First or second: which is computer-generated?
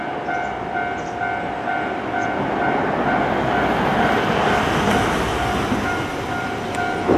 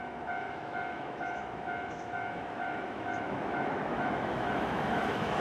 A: second